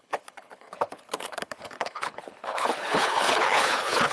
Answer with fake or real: fake